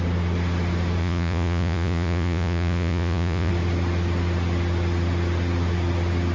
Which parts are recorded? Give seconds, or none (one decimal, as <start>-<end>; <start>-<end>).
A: 0.0-1.0; 3.5-6.3